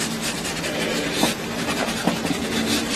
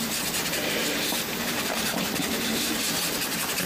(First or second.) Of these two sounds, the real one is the first